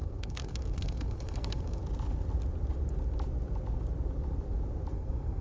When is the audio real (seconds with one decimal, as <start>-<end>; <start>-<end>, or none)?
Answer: 1.8-4.9